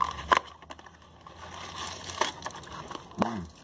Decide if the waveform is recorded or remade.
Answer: recorded